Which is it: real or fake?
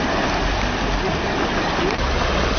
real